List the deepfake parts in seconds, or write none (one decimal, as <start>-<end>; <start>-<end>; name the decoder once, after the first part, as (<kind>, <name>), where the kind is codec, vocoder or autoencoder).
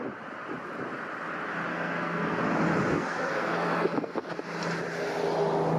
1.7-2.4 (codec, SNAC); 2.9-4.3